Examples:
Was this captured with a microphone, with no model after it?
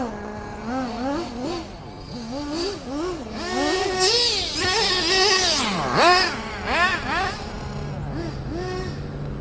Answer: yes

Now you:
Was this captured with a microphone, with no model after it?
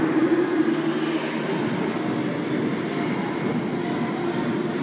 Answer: yes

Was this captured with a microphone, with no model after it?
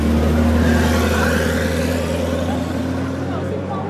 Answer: yes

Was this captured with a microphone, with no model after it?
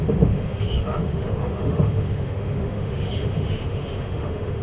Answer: no